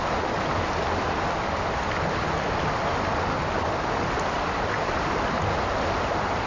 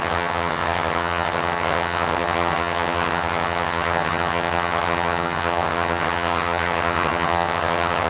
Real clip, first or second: first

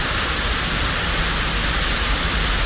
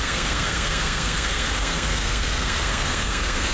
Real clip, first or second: first